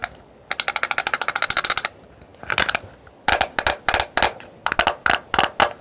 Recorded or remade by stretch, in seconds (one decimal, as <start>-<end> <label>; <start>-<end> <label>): 0.0-5.8 recorded